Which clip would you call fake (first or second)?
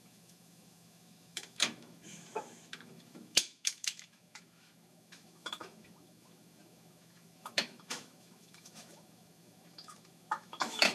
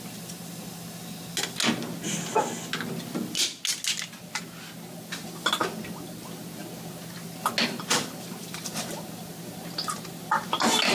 first